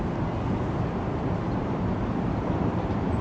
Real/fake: real